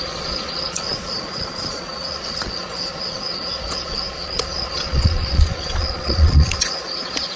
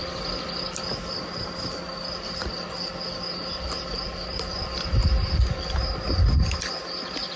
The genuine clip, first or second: second